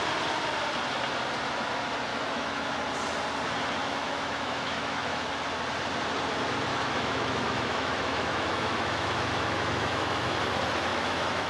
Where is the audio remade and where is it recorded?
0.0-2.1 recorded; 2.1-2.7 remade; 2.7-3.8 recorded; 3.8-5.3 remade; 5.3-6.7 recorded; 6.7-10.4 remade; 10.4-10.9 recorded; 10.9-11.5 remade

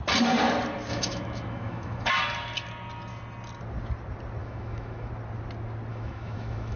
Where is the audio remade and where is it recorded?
0.0-0.9 recorded; 0.9-2.1 remade; 2.1-4.4 recorded; 4.4-5.1 remade; 5.1-5.9 recorded; 5.9-6.8 remade

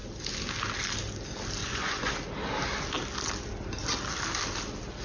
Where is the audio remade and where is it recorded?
0.0-1.6 recorded; 1.6-2.1 remade; 2.1-5.0 recorded

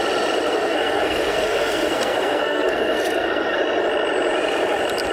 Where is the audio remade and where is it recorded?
0.0-0.5 recorded; 0.5-3.6 remade; 3.6-5.1 recorded

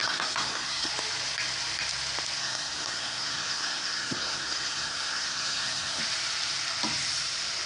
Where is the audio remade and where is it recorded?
0.0-0.9 remade; 0.9-2.4 recorded; 2.4-6.0 remade; 6.0-7.7 recorded

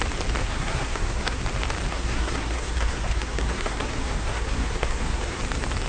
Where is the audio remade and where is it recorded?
0.0-0.4 recorded; 0.4-1.4 remade; 1.4-1.9 recorded; 1.9-5.4 remade; 5.4-5.9 recorded